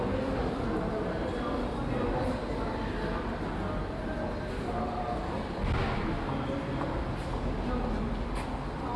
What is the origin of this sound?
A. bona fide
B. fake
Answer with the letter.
A